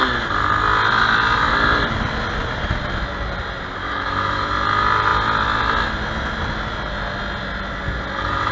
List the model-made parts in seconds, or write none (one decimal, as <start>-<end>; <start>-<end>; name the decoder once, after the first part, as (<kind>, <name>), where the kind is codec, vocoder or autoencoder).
3.8-4.4 (autoencoder, DAC-VAE)